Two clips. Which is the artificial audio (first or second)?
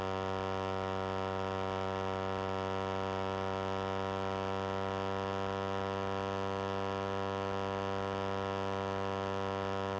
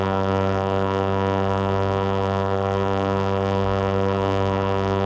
second